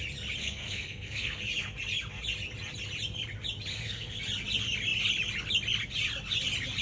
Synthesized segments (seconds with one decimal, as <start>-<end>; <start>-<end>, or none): 0.4-1.4; 3.7-4.2